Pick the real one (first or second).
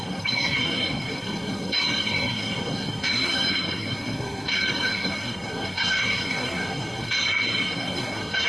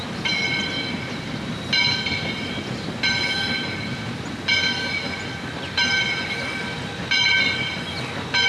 second